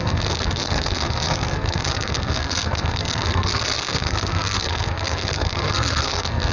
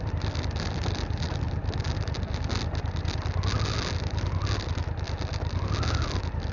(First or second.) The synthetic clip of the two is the first